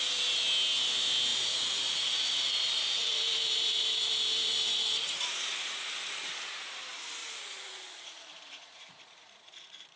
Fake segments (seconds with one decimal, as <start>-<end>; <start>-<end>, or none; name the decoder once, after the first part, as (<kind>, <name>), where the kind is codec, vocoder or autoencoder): 1.3-6.3 (vocoder, Vocos); 7.2-10.0